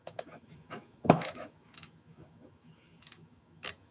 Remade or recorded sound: remade